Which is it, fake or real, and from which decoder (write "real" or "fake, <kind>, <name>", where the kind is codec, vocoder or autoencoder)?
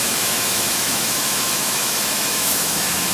fake, autoencoder, DAC-VAE